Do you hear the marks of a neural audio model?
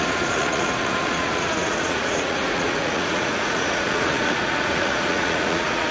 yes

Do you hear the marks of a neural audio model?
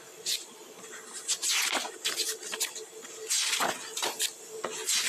no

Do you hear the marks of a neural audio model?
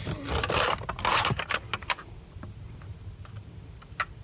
no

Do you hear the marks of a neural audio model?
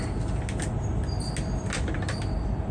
no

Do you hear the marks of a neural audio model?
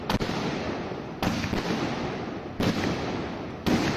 no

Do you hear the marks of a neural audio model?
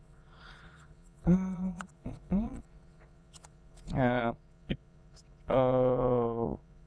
yes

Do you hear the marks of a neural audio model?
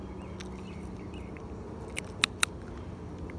no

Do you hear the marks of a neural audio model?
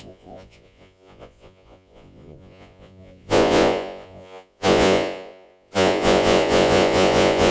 yes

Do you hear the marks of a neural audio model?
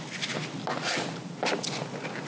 no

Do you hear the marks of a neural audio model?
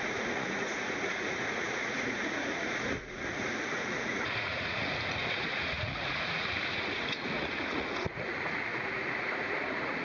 yes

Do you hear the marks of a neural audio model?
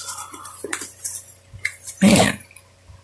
no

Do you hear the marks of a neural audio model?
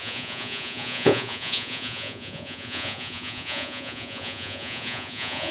yes